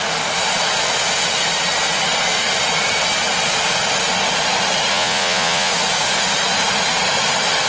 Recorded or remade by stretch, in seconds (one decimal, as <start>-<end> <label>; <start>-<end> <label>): 0.0-4.9 recorded; 4.9-5.7 remade; 5.7-7.7 recorded